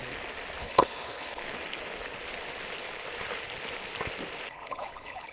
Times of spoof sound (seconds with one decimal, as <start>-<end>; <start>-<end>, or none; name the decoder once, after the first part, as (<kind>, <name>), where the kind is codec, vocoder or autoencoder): 0.6-1.4 (codec, HILCodec); 4.5-5.3